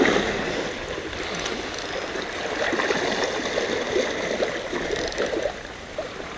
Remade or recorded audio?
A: recorded